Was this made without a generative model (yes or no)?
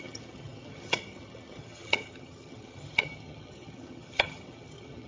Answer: no